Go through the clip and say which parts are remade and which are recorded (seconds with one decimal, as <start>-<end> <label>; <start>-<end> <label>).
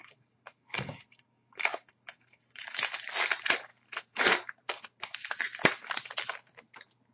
0.0-1.7 recorded; 1.7-3.1 remade; 3.1-3.7 recorded; 3.7-5.0 remade; 5.0-7.1 recorded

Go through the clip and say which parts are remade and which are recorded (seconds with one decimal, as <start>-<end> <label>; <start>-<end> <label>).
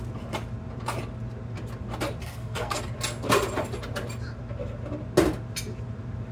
0.0-2.2 recorded; 2.2-2.8 remade; 2.8-6.3 recorded